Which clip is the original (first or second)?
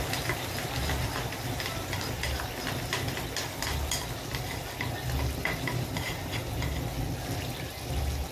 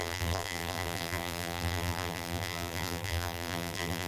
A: first